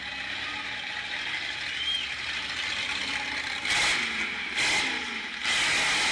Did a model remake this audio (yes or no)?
no